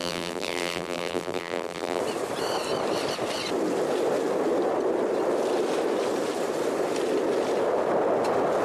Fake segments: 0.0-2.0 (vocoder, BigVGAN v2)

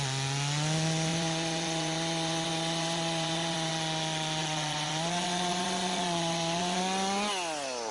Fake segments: 1.1-3.7 (vocoder, Vocos); 4.4-6.8

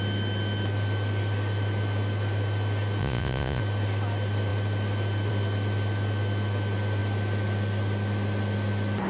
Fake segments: 3.0-3.6 (vocoder, Vocos)

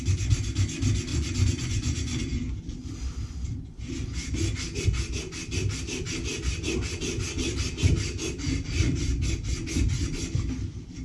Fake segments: 1.1-2.2 (vocoder, Vocos)

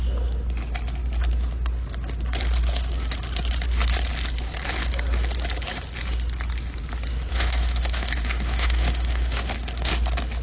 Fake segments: 7.3-9.9 (autoencoder, DAC-VAE)

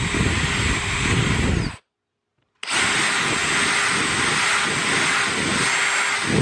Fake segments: none

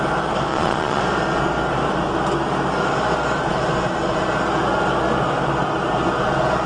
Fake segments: 0.5-1.0 (vocoder, Vocos)

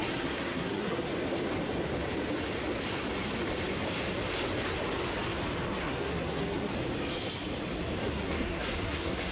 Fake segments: 0.0-1.1 (codec, SNAC); 5.8-6.7; 8.0-9.3